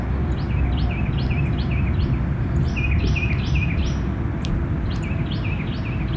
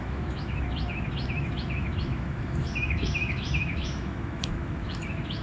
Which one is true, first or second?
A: first